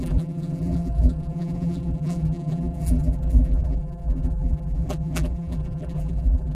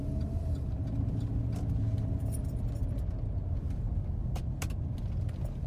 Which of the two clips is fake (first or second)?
first